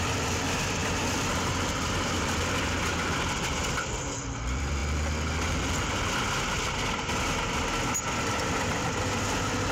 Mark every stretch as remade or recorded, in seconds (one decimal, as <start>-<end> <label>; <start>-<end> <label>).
0.0-4.8 remade; 4.8-8.3 recorded; 8.3-9.7 remade